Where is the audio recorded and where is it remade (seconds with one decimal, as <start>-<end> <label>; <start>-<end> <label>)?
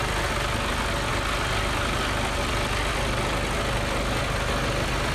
0.0-5.1 recorded